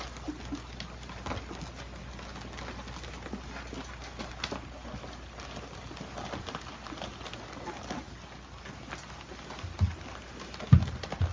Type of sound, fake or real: real